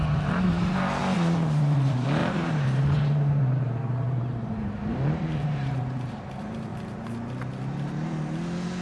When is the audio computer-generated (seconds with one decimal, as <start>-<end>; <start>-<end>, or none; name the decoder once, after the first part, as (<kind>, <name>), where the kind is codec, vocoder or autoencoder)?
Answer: 0.0-1.0 (vocoder, BigVGAN v2); 1.6-6.7